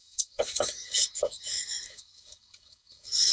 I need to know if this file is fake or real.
fake